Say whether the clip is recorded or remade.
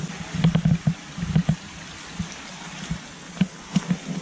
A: recorded